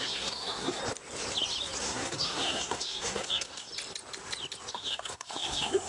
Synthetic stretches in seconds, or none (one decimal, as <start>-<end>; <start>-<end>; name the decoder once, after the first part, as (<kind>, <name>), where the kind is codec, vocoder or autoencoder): 0.0-0.8 (codec, SNAC); 1.8-3.7; 4.7-5.9